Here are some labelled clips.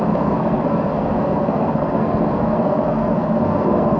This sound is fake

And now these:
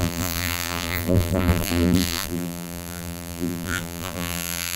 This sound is fake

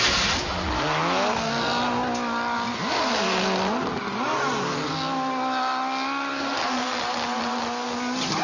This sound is real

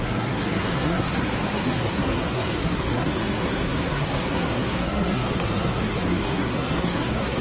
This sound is fake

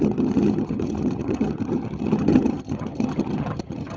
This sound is fake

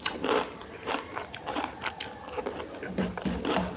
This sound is real